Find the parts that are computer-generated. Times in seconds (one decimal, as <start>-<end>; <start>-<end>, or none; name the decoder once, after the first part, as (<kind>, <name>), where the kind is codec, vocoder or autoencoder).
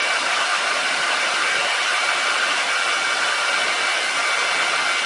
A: 0.0-2.6 (vocoder, BigVGAN v2)